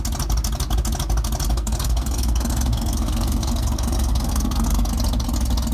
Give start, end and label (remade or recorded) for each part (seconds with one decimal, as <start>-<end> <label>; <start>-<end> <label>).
0.0-1.5 recorded; 1.5-4.9 remade; 4.9-5.7 recorded

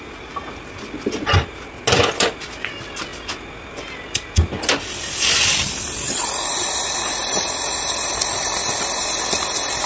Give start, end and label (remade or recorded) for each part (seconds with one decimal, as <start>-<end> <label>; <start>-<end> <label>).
0.0-9.9 recorded

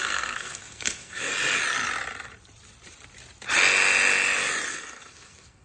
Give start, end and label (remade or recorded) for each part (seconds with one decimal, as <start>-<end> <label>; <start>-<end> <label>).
0.0-1.3 remade; 1.3-4.7 recorded; 4.7-5.6 remade

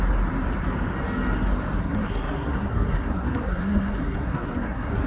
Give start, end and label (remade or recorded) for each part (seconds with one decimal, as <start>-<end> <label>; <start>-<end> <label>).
0.0-1.8 recorded; 1.8-5.1 remade